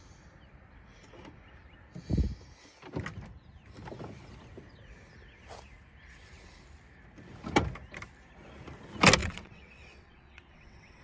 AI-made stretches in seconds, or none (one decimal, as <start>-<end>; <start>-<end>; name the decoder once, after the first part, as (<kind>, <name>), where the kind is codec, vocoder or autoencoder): 9.2-11.0 (vocoder, WaveNeXt)